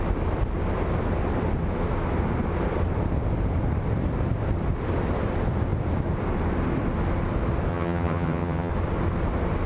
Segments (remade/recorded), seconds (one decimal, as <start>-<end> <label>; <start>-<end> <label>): 0.0-7.7 recorded; 7.7-8.7 remade; 8.7-9.7 recorded